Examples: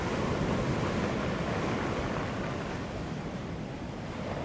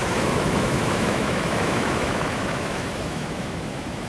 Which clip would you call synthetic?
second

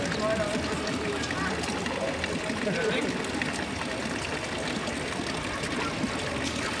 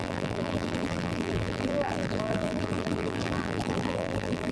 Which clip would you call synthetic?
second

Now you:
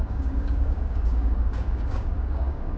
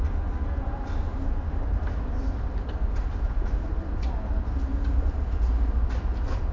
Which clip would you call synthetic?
first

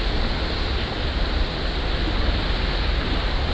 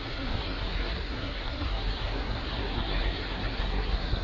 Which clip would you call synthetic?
second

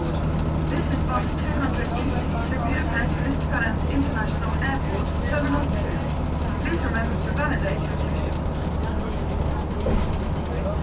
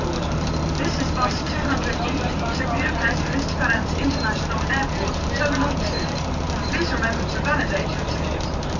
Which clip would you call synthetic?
second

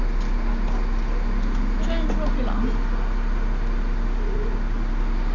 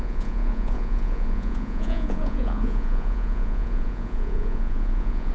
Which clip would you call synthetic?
second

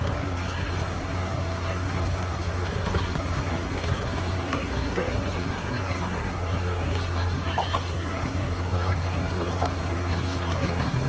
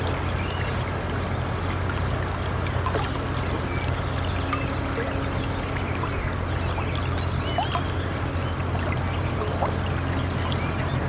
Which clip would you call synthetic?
first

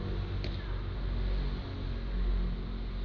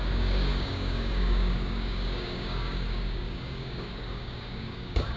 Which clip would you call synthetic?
second